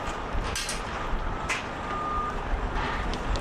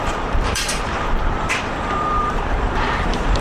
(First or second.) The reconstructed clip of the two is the second